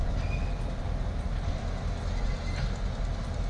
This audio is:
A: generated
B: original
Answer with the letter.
B